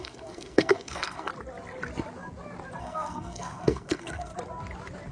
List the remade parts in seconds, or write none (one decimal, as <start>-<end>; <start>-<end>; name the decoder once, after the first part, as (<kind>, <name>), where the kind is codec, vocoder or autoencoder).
0.0-1.3 (codec, SNAC); 2.8-4.3